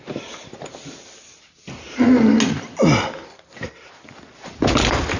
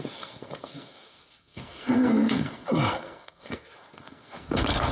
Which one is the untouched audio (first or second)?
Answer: first